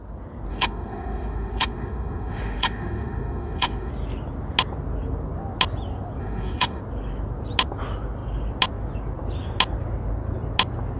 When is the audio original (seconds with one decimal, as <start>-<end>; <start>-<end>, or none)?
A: 0.0-0.5; 3.9-6.2; 6.8-11.0